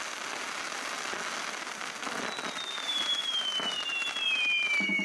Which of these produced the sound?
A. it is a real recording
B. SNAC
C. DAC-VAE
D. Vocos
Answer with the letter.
A